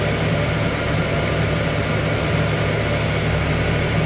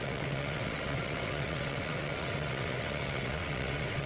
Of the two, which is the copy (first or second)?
second